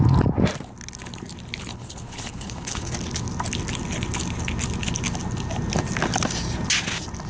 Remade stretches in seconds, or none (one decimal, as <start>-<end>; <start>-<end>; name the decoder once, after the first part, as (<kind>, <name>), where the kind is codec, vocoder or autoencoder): 1.7-2.9 (codec, HILCodec)